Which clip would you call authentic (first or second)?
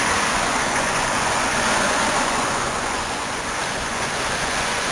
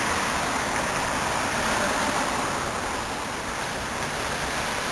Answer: second